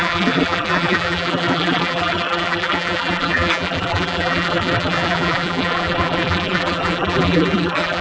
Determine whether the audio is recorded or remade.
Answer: remade